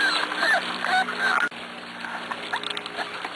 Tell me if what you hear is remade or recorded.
recorded